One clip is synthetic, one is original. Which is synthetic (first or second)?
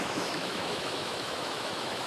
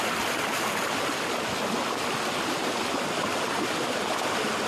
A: first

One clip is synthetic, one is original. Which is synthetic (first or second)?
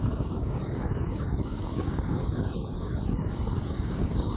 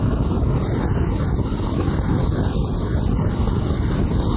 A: first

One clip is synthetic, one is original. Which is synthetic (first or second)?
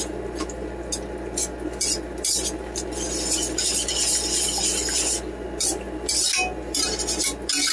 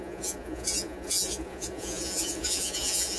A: second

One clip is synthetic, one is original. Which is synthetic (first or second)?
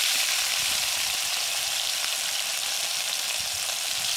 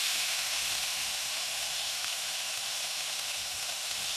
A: second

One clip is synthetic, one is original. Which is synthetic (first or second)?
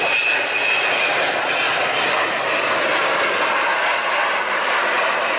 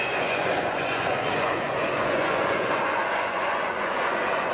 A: second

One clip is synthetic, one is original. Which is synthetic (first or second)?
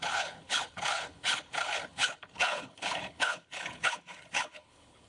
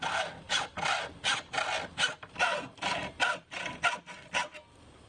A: first